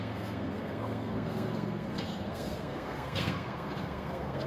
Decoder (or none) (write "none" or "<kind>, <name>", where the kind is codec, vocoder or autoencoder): codec, SNAC